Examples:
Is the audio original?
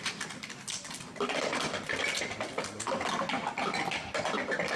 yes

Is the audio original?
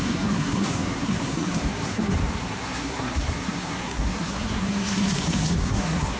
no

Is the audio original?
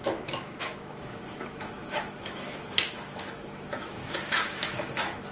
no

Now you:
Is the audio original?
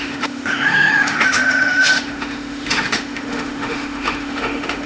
no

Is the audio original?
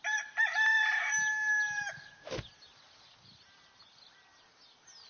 yes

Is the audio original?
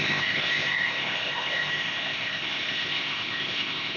no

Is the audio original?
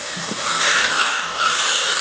no